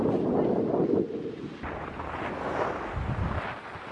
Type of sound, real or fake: real